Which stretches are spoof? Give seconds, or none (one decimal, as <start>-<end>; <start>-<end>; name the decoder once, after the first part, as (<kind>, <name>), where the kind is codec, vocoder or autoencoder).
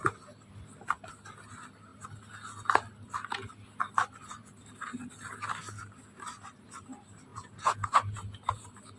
7.3-8.2 (vocoder, Vocos)